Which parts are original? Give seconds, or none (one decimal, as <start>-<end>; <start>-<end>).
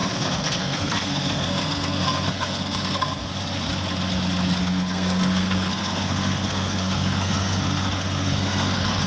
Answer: 3.2-4.6